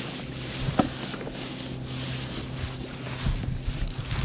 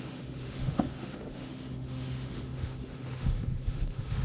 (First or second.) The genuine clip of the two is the first